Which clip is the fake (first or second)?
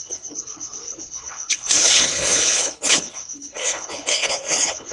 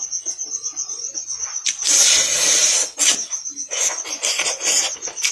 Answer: first